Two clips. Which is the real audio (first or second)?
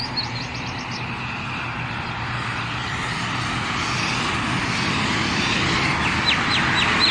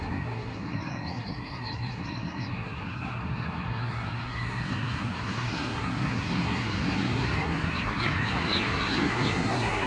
first